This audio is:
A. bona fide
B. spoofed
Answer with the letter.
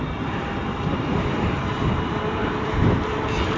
B